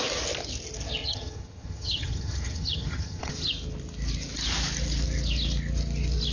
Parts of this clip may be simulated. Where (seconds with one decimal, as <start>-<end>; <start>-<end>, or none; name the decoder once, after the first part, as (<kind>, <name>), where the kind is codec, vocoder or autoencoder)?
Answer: 1.0-3.3 (vocoder, HiFi-GAN)